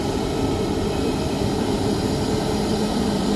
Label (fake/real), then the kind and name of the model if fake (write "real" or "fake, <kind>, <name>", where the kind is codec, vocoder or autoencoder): fake, vocoder, BigVGAN v2